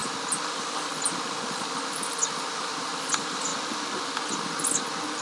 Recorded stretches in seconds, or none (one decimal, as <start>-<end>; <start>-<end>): 3.1-5.2